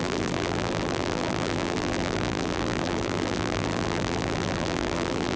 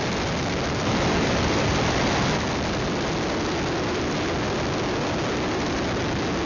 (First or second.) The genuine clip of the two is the second